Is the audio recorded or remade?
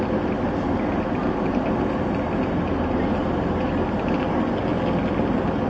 recorded